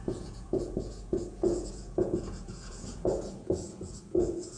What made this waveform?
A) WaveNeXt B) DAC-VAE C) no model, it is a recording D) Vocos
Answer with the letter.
D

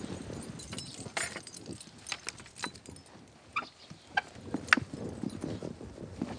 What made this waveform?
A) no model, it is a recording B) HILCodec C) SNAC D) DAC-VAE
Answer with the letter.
A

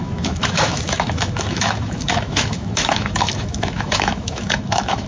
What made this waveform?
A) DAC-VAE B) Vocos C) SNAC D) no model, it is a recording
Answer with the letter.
A